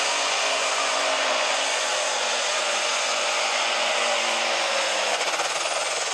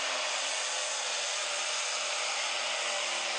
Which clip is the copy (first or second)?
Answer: first